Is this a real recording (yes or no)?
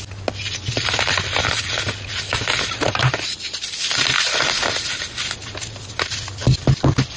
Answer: yes